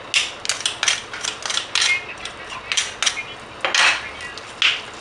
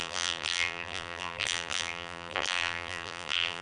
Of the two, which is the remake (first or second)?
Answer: second